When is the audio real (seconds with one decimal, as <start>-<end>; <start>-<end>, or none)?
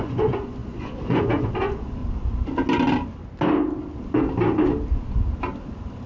2.0-6.1